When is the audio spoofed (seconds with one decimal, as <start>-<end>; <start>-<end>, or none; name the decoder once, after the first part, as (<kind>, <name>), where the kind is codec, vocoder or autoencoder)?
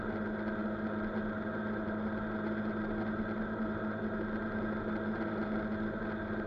none